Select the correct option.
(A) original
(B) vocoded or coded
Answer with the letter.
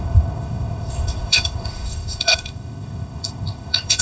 B